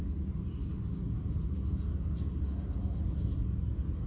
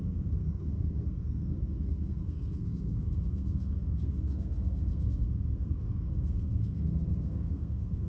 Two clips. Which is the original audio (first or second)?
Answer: first